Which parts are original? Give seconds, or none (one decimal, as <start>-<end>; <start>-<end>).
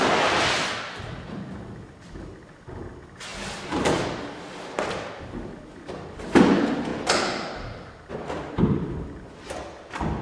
0.0-10.2